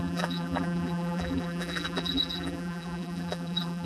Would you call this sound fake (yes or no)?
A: yes